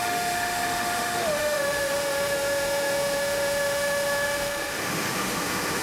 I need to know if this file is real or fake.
fake